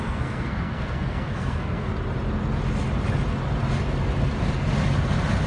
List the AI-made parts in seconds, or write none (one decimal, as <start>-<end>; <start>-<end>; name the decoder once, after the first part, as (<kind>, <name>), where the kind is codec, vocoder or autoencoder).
0.0-1.9 (codec, SNAC)